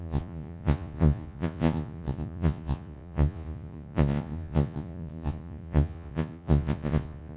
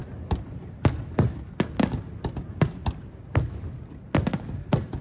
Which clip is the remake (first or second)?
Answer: first